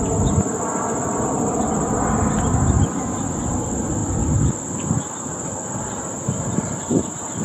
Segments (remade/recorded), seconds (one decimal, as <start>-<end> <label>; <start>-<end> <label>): 0.0-7.4 recorded